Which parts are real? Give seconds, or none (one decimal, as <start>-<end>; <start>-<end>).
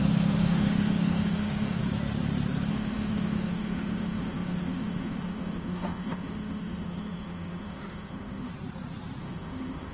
1.8-2.7; 8.5-9.2